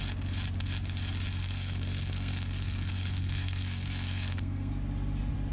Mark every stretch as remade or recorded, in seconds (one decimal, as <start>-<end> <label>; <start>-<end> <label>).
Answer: 0.0-1.4 recorded; 1.4-4.7 remade; 4.7-5.5 recorded